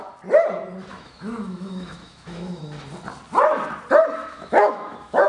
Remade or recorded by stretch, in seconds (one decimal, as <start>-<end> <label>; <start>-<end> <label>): 0.0-0.9 recorded; 0.9-2.6 remade; 2.6-4.2 recorded; 4.2-5.3 remade